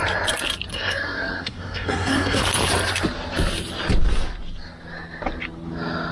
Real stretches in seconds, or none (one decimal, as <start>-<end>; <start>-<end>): 0.0-0.7; 2.4-6.1